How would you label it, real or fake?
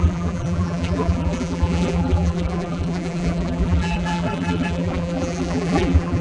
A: fake